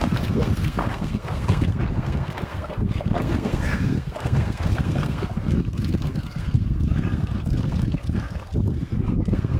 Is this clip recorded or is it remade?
remade